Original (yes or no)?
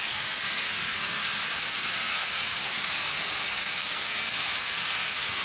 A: no